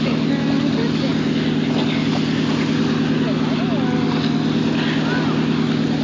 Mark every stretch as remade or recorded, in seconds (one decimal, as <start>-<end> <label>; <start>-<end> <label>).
0.0-6.0 recorded